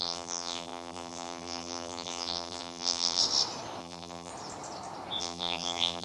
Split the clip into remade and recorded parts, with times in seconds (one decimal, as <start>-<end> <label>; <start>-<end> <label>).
0.0-3.2 remade; 3.2-3.8 recorded; 3.8-4.3 remade; 4.3-5.2 recorded; 5.2-6.0 remade